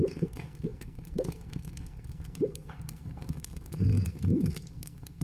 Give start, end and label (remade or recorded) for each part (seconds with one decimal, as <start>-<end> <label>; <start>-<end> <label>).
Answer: 0.0-5.2 remade